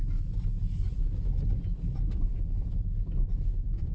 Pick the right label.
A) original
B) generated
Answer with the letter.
A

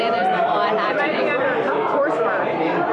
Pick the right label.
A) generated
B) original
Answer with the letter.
A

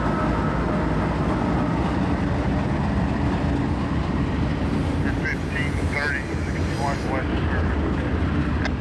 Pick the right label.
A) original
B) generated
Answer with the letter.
A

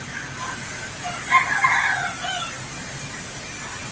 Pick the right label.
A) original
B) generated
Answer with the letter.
A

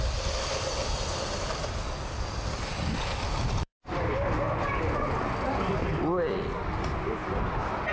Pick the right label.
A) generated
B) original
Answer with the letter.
B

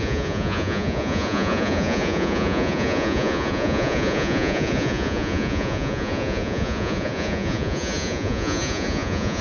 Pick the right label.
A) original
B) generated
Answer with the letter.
B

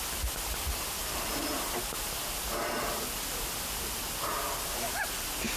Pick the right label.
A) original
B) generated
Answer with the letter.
A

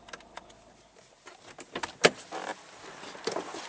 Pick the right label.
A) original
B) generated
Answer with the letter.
A